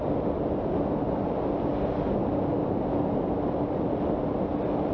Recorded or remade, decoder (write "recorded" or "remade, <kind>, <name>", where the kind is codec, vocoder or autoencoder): recorded